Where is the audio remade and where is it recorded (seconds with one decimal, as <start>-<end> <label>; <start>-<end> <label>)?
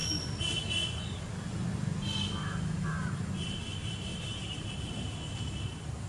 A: 0.0-4.1 recorded; 4.1-4.7 remade; 4.7-6.1 recorded